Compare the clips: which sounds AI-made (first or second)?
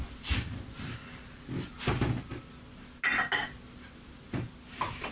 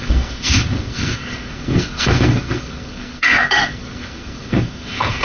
second